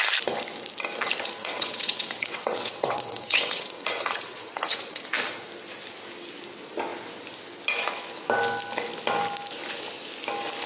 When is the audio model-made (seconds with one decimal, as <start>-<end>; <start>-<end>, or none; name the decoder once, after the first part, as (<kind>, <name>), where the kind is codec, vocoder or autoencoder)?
1.4-5.0 (vocoder, WaveNeXt)